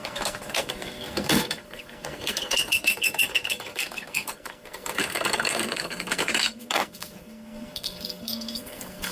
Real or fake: fake